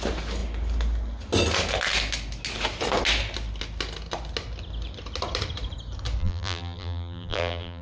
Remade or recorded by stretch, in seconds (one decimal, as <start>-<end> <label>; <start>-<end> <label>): 0.0-6.2 recorded; 6.2-7.8 remade